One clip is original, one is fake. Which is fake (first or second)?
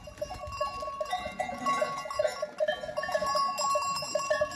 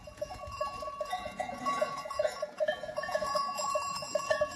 second